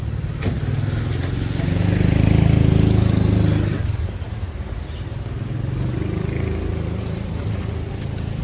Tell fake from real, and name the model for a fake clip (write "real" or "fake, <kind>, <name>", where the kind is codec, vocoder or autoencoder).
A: real